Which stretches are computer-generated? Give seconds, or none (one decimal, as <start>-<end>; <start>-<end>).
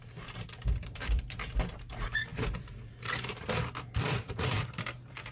0.0-5.3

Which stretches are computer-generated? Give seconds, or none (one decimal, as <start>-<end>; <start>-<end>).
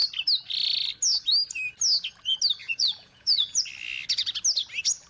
2.6-3.6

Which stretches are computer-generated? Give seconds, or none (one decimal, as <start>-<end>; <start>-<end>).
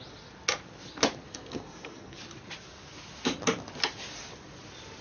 1.3-2.2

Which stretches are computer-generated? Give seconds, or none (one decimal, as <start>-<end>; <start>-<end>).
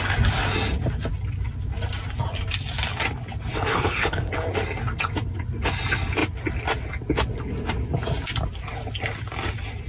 3.5-4.3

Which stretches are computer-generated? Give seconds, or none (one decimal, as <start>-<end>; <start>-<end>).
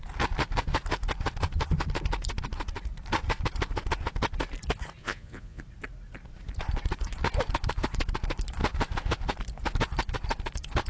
5.0-5.6